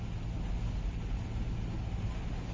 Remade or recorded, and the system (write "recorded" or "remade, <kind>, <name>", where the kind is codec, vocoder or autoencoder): recorded